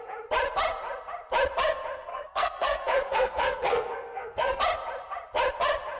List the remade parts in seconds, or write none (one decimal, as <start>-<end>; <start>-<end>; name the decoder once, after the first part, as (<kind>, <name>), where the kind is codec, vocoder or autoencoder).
2.1-4.6 (codec, SNAC)